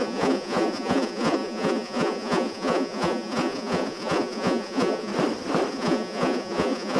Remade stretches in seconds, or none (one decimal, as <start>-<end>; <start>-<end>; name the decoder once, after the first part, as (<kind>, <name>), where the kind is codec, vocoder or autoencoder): 0.0-5.1 (vocoder, Vocos); 5.7-7.0